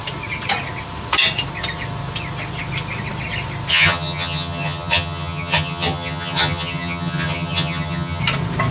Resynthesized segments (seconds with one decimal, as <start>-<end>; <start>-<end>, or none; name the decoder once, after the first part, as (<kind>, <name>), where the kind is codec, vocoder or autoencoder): 3.7-8.2 (vocoder, HiFi-GAN)